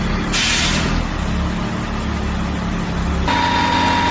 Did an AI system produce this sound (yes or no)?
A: no